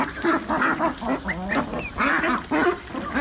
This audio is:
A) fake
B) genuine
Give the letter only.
B